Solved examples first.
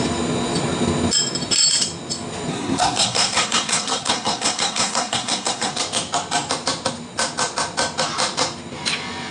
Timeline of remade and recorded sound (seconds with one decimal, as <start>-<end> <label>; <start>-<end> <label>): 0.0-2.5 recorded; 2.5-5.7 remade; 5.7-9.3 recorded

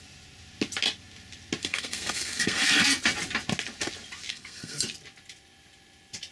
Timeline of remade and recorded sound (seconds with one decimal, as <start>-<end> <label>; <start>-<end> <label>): 0.0-1.6 recorded; 1.6-2.9 remade; 2.9-4.3 recorded; 4.3-4.8 remade; 4.8-6.3 recorded

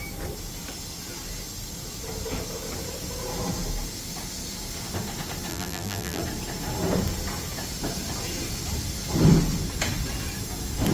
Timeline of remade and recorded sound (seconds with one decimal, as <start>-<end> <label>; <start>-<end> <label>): 0.0-5.5 recorded; 5.5-6.2 remade; 6.2-10.9 recorded